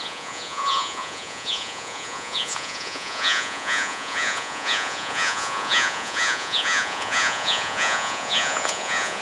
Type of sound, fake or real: fake